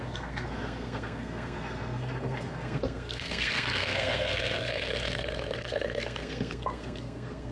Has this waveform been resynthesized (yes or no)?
yes